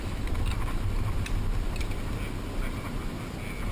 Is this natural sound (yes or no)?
yes